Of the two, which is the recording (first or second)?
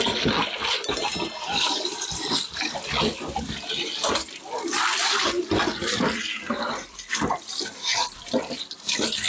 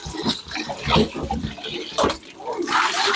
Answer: second